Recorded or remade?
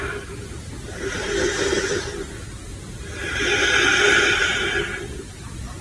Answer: recorded